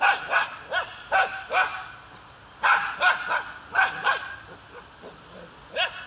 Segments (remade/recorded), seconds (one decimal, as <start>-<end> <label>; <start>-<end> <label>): 0.0-6.1 recorded